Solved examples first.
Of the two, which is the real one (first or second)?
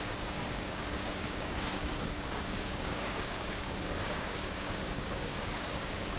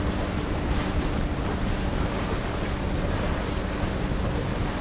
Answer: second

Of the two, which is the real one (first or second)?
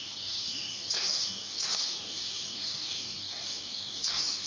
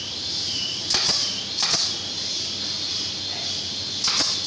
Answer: second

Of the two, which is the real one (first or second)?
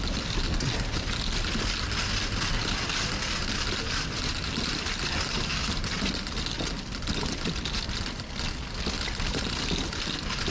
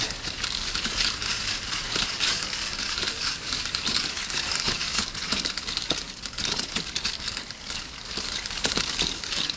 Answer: first